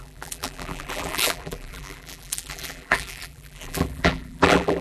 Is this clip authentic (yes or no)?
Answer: no